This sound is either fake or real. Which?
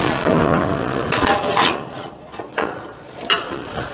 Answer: fake